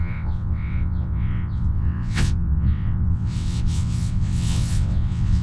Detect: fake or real fake